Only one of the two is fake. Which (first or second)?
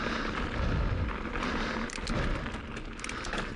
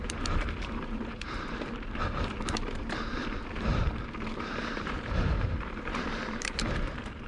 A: second